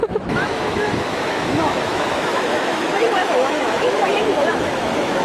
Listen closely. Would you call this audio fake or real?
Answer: fake